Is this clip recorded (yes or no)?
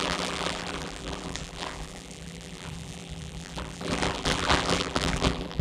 no